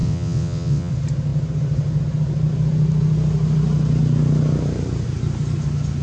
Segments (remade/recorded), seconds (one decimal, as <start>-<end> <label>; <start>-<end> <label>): 0.0-0.9 remade; 0.9-6.0 recorded